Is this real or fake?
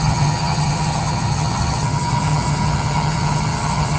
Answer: fake